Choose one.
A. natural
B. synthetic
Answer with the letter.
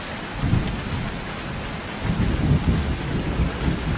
A